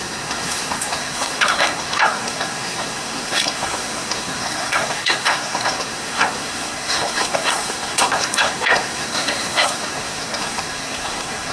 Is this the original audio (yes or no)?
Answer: no